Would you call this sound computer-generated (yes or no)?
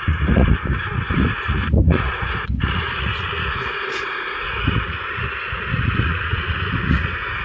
yes